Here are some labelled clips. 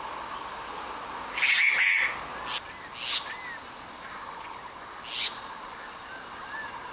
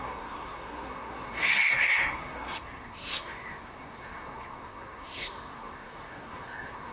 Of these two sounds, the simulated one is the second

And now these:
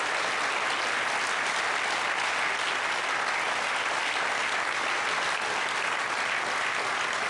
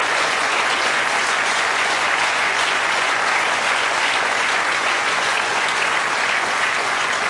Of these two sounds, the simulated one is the second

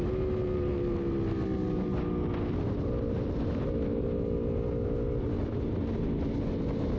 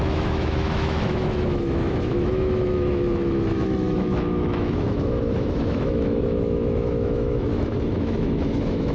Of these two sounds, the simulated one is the second